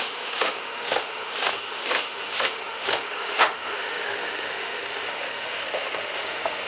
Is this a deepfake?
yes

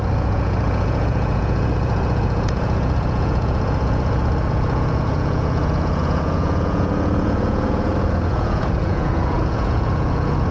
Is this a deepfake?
yes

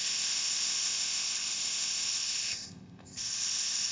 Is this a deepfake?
yes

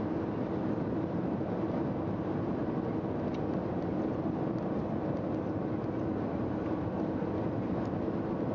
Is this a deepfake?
no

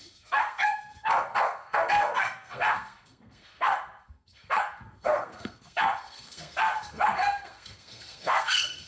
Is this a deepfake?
yes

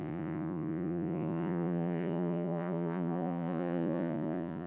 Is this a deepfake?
yes